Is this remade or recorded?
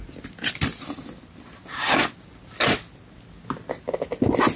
recorded